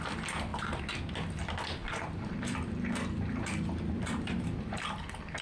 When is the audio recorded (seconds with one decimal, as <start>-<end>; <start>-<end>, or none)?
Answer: 0.0-1.8; 5.0-5.4